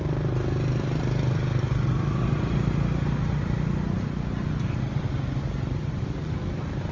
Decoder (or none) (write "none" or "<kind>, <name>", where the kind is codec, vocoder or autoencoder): none